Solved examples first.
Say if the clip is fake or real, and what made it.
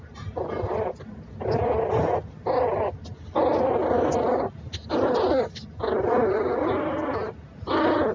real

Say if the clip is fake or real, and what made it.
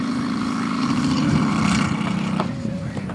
fake, vocoder, BigVGAN v2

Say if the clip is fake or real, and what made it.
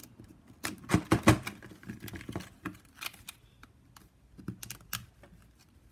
real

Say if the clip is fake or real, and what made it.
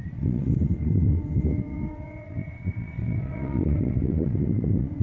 fake, vocoder, WaveNeXt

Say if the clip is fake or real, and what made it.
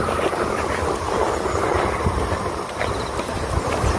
real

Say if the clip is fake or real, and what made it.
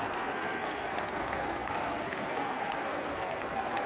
fake, codec, SNAC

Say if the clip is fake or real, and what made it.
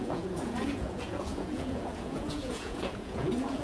fake, vocoder, Vocos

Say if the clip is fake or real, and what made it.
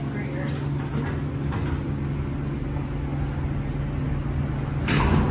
real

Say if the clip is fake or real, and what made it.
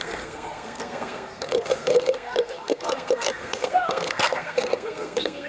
fake, codec, SNAC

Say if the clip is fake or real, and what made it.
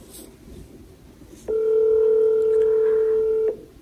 real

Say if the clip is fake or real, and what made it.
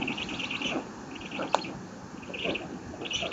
real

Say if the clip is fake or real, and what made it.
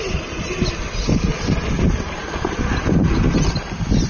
real